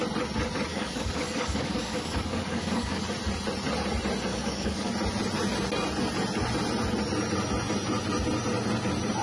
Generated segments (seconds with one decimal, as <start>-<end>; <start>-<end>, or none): 0.7-3.0; 4.3-4.9